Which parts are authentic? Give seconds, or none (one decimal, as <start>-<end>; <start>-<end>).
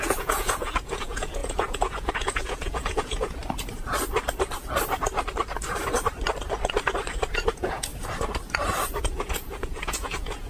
3.4-7.5; 7.9-9.0